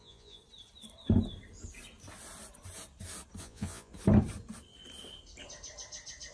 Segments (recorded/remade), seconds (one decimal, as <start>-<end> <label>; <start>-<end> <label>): 0.0-0.4 remade; 0.4-3.4 recorded; 3.4-3.9 remade; 3.9-6.3 recorded